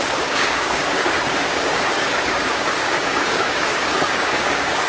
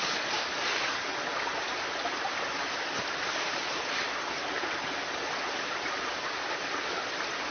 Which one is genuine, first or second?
second